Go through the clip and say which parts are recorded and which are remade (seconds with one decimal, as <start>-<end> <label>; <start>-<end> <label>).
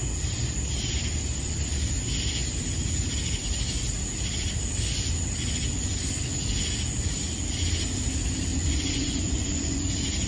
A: 0.0-8.5 recorded; 8.5-9.9 remade; 9.9-10.3 recorded